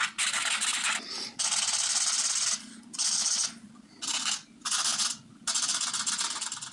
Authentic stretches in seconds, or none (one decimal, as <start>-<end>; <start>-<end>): 0.0-6.7